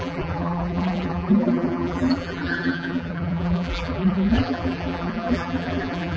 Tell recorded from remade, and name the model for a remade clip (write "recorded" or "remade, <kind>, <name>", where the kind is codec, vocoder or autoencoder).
remade, vocoder, BigVGAN v2